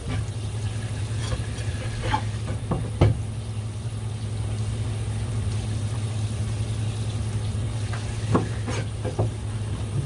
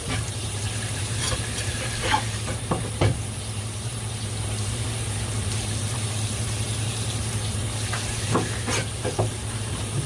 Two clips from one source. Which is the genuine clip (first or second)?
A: first